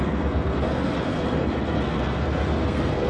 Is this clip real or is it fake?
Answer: fake